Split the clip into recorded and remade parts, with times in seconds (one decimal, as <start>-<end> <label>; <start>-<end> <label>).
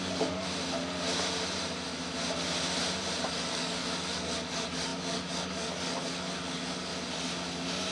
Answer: 0.0-0.5 remade; 0.5-3.3 recorded; 3.3-6.9 remade; 6.9-7.9 recorded